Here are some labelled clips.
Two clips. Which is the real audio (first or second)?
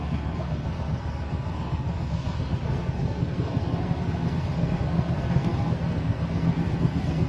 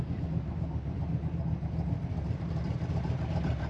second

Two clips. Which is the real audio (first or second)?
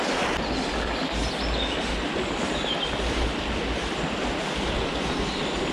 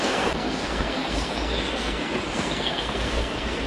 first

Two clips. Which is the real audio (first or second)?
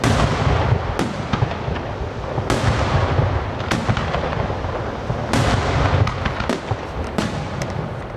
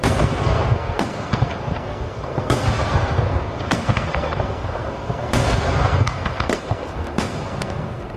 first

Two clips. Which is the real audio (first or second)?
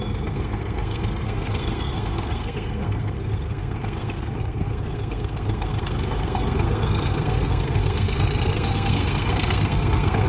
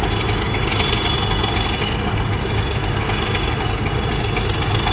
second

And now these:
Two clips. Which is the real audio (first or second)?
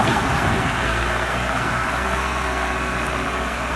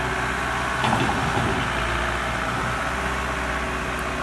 second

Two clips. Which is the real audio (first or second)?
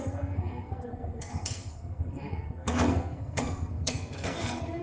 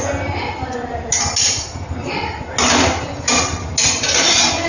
second